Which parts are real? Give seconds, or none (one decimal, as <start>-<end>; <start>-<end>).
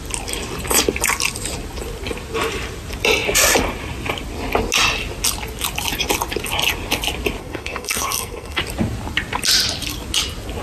0.0-7.4; 8.6-10.6